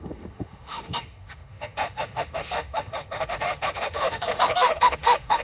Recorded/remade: remade